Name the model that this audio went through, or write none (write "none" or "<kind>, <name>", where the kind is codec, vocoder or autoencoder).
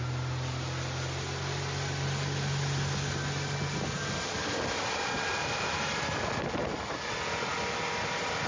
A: none